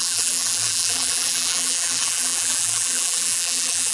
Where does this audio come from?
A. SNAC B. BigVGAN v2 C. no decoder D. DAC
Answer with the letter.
B